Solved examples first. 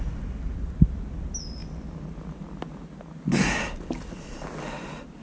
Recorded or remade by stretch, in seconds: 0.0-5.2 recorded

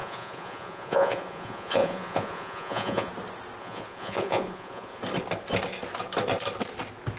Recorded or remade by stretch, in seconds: 0.0-3.1 remade; 3.1-3.6 recorded; 3.6-5.0 remade; 5.0-7.2 recorded

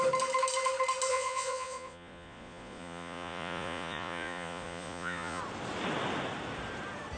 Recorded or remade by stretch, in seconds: 0.0-1.1 recorded; 1.1-5.4 remade; 5.4-7.2 recorded